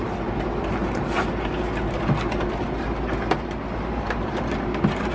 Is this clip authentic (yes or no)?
yes